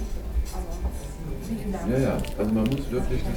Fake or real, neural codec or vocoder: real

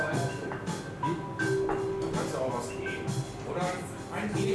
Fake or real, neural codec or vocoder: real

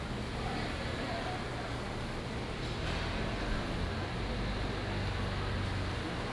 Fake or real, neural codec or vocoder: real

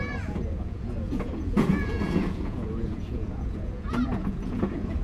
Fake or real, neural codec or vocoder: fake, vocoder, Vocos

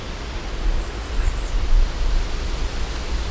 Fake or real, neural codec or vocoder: real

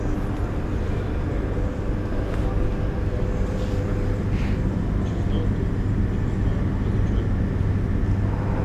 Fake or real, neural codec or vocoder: real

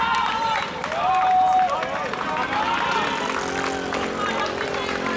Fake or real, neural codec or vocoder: real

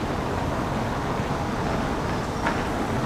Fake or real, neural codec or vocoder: real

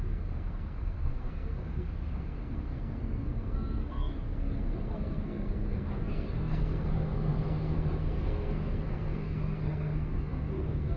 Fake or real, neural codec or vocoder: fake, codec, SNAC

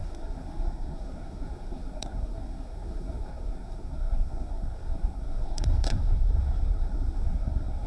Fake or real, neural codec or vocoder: fake, codec, SNAC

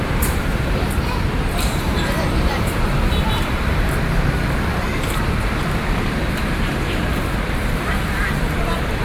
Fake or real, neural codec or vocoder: fake, vocoder, BigVGAN v2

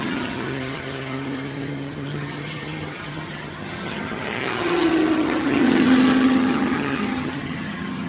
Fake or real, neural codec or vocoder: fake, vocoder, HiFi-GAN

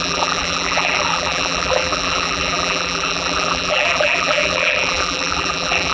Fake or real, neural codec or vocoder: fake, vocoder, BigVGAN v2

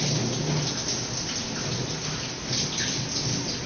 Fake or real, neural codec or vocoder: real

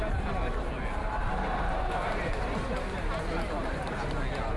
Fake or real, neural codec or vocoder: real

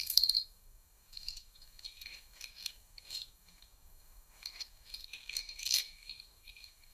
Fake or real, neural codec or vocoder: fake, codec, DAC